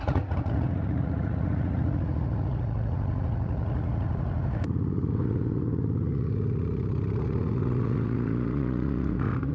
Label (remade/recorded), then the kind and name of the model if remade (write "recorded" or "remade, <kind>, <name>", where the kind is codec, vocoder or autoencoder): remade, vocoder, Vocos